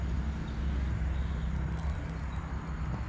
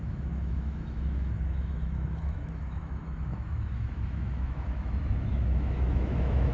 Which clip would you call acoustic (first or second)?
first